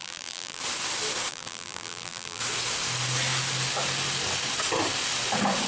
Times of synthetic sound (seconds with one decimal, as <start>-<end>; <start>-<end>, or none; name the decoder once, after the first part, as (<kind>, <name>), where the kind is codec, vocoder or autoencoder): 0.0-0.6 (vocoder, BigVGAN v2); 1.3-2.4